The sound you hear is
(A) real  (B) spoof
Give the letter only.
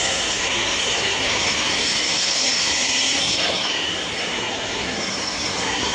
B